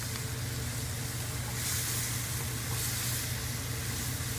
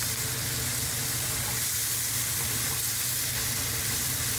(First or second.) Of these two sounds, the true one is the first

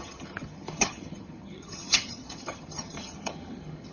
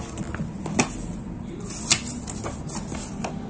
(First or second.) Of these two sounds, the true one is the second